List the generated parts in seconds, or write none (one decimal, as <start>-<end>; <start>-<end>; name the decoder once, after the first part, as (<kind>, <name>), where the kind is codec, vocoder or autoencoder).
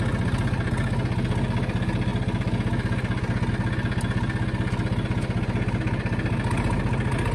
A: none